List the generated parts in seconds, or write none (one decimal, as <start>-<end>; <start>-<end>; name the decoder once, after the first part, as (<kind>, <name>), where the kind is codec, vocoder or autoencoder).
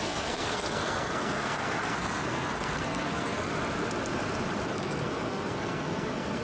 0.0-3.5 (codec, SNAC); 4.7-6.4